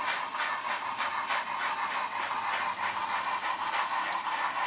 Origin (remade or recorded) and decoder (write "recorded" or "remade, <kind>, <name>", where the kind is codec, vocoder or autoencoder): recorded